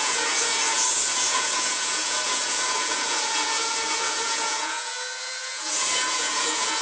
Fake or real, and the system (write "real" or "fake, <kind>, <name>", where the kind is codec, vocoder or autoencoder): fake, vocoder, Vocos